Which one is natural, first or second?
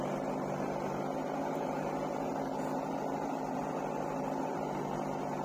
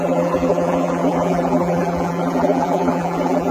first